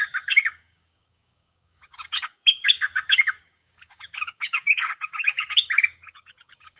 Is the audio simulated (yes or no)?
yes